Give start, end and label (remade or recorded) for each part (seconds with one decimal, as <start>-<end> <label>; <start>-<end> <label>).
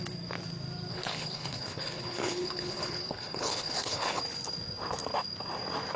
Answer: 0.0-0.9 recorded; 0.9-4.2 remade; 4.2-6.0 recorded